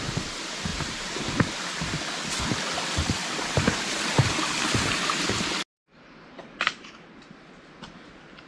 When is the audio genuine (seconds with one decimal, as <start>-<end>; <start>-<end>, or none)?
0.0-0.7; 1.5-3.2; 5.2-5.9; 7.2-8.5